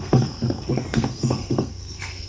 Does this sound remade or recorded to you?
remade